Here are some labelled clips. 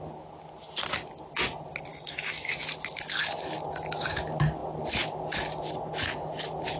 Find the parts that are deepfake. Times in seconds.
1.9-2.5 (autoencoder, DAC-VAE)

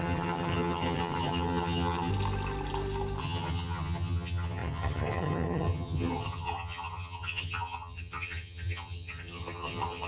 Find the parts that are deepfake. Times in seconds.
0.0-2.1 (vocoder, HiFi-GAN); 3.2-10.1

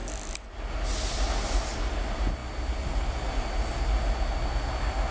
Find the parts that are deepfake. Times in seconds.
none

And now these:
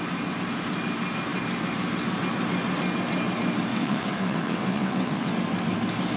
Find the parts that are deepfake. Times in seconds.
3.7-5.3 (vocoder, WaveNeXt)

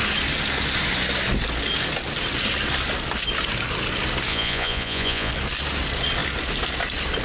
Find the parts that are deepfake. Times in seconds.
4.3-5.3 (vocoder, Vocos)

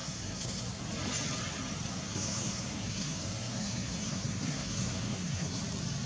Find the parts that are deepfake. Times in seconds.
0.0-0.8 (codec, SNAC); 1.9-5.6